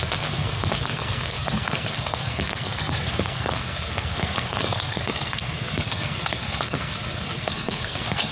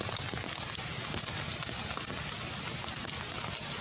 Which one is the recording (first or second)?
second